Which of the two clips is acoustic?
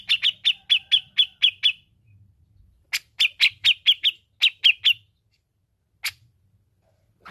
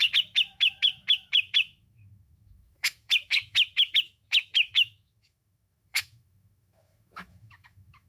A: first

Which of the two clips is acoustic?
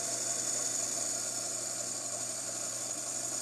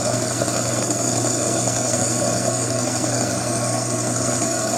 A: first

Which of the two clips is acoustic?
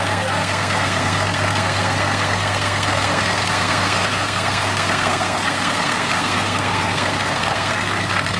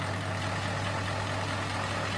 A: second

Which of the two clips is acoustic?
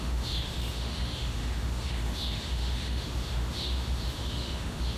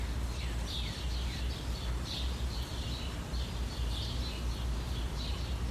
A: second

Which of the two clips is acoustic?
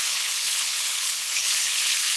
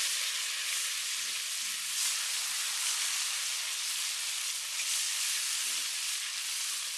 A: second